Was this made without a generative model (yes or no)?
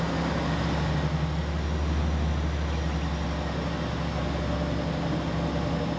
yes